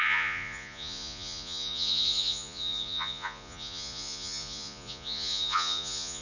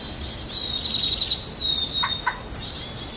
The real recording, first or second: second